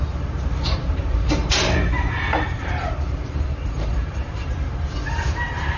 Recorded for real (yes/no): no